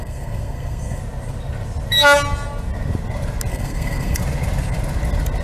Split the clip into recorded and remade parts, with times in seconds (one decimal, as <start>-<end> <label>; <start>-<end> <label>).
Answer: 0.0-1.0 remade; 1.0-3.5 recorded; 3.5-4.2 remade; 4.2-5.4 recorded